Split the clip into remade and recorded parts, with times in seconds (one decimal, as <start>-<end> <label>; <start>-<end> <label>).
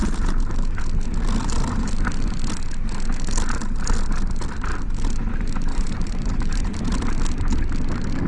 0.0-0.8 remade; 0.8-1.4 recorded; 1.4-1.9 remade; 1.9-5.7 recorded; 5.7-6.8 remade; 6.8-8.3 recorded